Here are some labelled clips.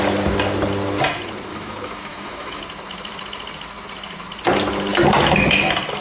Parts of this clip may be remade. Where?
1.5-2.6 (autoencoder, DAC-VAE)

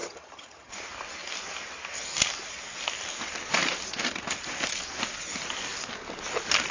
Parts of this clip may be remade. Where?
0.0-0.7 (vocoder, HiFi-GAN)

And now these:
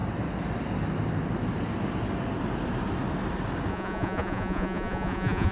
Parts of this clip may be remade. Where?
3.7-5.5 (vocoder, Vocos)